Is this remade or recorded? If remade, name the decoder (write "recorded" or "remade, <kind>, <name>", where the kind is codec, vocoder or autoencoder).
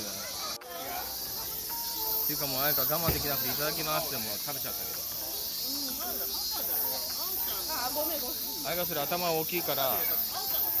recorded